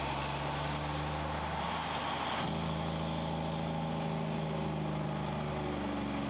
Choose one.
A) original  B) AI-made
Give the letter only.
A